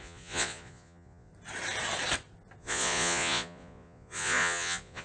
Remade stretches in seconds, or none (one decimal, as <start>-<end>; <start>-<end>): 0.0-1.3; 2.6-5.0